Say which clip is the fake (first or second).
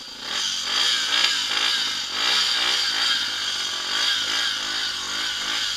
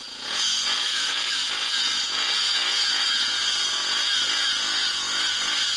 second